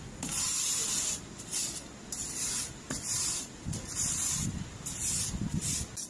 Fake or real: real